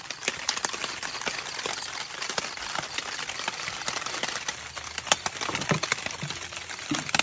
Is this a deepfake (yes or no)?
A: no